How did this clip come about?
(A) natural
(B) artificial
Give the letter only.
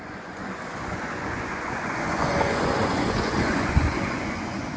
B